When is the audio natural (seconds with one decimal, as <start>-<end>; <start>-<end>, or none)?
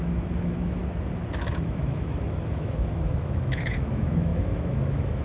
0.8-1.4